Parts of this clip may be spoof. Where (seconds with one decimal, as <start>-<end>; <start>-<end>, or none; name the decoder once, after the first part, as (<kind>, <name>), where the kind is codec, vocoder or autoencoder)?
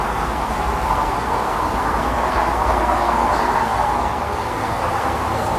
0.0-5.6 (codec, SNAC)